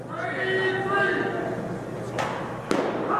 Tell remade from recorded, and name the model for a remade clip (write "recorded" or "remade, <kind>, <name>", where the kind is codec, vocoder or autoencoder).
recorded